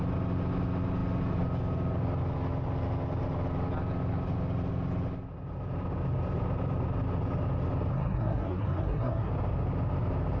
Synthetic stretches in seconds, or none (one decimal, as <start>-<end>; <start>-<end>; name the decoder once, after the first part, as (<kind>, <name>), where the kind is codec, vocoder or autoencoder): 7.9-9.3 (codec, SNAC)